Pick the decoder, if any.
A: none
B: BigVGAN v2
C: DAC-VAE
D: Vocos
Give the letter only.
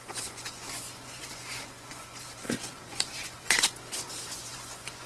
D